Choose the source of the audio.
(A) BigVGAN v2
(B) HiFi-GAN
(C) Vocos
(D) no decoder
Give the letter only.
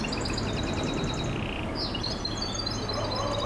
D